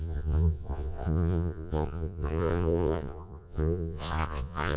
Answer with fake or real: fake